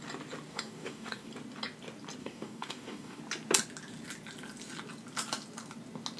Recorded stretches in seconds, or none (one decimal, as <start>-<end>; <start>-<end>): 0.0-0.5; 1.3-2.2; 3.2-6.2